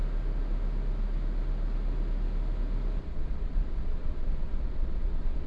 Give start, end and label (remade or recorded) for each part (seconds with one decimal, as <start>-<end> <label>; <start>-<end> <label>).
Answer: 0.0-3.0 recorded; 3.0-5.5 remade